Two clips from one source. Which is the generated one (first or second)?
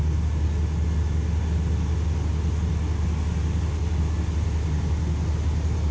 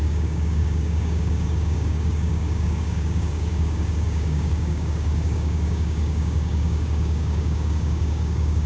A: second